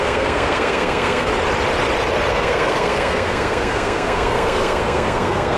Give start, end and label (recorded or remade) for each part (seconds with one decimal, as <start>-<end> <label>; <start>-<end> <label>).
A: 0.0-1.3 remade; 1.3-2.3 recorded; 2.3-5.6 remade

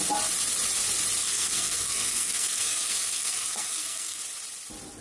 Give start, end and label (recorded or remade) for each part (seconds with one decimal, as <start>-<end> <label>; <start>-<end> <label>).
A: 0.0-1.2 recorded; 1.2-4.2 remade; 4.2-5.0 recorded

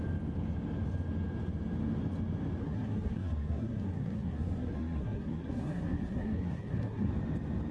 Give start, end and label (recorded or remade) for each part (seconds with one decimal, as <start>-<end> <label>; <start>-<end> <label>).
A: 0.0-2.6 recorded; 2.6-7.1 remade; 7.1-7.7 recorded

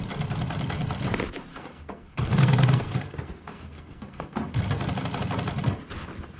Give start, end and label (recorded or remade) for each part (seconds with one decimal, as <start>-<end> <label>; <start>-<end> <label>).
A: 0.0-1.5 recorded; 1.5-4.5 remade; 4.5-6.4 recorded

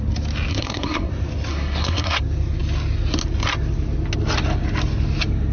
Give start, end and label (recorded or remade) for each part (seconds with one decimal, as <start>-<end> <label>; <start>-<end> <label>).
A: 0.0-0.5 recorded; 0.5-1.1 remade; 1.1-1.5 recorded; 1.5-2.2 remade; 2.2-5.5 recorded

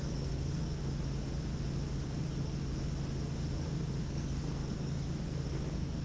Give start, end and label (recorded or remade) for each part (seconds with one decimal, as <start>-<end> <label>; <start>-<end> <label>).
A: 0.0-0.8 remade; 0.8-4.0 recorded; 4.0-6.0 remade

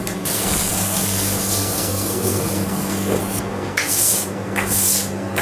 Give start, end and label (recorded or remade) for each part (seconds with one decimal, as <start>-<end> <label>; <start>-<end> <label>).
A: 0.0-5.4 remade

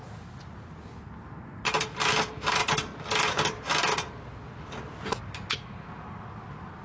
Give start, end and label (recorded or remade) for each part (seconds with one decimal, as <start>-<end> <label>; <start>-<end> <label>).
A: 0.0-6.8 recorded